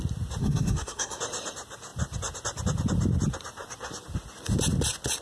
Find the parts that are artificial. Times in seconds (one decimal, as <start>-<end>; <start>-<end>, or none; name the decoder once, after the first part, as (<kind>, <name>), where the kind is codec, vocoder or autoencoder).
0.4-1.2 (codec, SNAC)